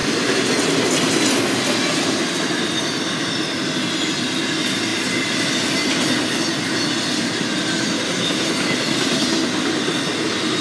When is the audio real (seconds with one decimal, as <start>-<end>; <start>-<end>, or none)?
0.0-10.6